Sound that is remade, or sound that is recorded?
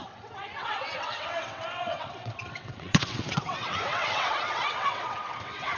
remade